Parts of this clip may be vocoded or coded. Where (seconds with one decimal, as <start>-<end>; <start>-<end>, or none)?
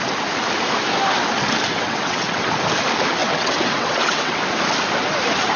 1.7-2.5; 3.2-4.4